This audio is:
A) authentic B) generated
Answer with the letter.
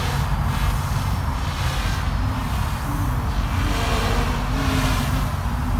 A